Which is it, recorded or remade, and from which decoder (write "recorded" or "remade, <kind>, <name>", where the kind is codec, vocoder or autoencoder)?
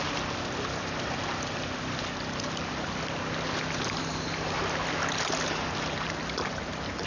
recorded